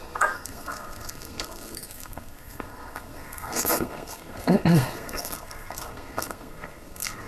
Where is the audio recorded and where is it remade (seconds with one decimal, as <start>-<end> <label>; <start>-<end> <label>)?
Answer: 0.0-7.3 remade